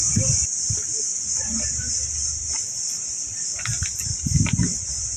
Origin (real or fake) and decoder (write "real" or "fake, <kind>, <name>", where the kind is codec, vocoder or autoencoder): real